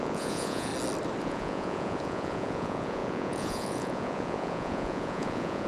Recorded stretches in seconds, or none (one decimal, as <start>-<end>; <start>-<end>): 0.7-1.2